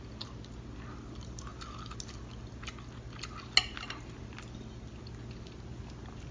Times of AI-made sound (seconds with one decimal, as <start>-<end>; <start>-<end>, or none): none